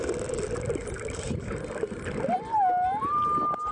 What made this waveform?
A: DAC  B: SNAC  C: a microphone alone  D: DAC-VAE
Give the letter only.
C